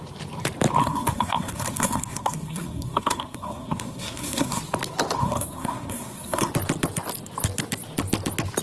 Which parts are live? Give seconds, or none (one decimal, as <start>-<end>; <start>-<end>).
0.0-0.8; 4.6-5.2; 6.5-8.6